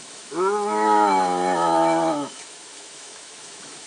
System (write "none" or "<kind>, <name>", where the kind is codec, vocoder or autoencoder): autoencoder, DAC-VAE